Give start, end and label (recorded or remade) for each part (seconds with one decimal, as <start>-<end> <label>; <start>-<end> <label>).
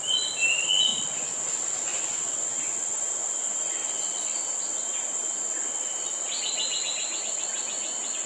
0.0-8.3 recorded